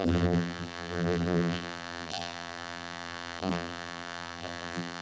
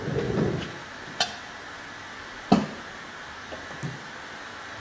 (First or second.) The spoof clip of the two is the first